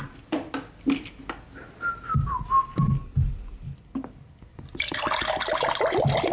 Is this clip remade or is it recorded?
recorded